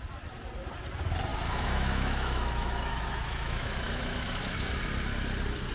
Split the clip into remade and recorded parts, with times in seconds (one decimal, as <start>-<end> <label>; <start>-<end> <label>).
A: 0.0-1.3 recorded; 1.3-4.7 remade; 4.7-5.7 recorded